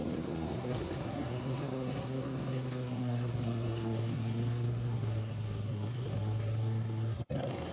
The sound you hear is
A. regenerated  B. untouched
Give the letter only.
A